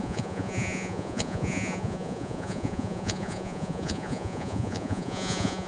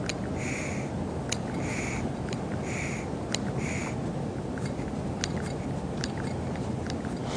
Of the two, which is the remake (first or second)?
first